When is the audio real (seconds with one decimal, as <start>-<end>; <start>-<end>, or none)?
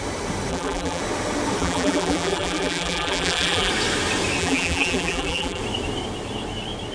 0.0-0.5; 1.0-1.6; 3.7-4.4; 5.6-6.9